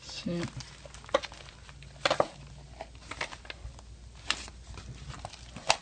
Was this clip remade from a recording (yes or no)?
no